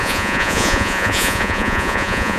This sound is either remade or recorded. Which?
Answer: remade